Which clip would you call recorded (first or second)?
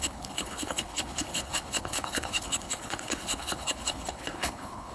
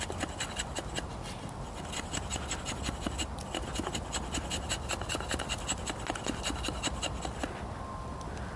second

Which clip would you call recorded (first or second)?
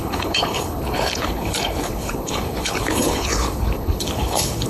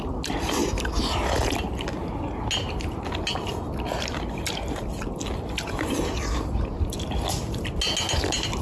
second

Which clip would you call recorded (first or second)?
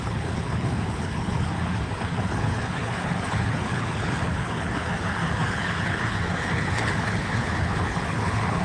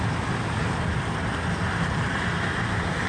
second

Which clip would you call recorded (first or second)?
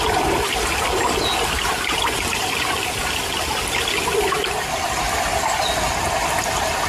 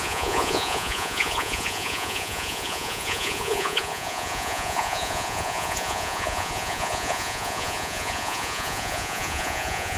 first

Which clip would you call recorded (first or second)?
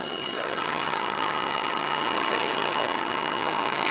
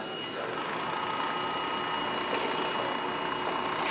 second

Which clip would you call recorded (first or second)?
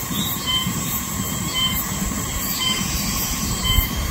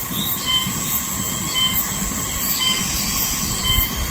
second